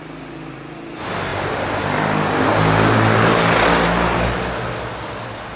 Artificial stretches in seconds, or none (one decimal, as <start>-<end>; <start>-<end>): none